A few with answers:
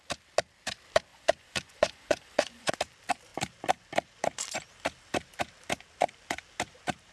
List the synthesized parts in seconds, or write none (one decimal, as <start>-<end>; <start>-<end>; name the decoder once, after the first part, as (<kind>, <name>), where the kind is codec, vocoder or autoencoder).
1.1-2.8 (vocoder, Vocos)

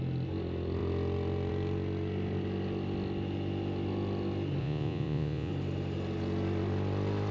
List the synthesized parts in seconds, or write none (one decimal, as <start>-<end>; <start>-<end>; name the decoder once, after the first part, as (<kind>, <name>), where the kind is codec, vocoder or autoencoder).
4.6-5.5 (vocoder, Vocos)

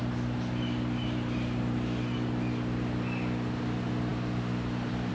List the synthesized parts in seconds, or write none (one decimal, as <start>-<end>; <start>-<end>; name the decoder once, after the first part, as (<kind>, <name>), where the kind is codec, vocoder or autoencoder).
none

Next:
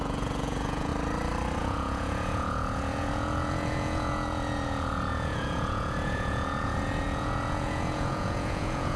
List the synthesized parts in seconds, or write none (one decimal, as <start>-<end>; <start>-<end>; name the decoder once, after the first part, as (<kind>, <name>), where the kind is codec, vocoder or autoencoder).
0.0-0.9 (vocoder, Vocos); 1.6-9.0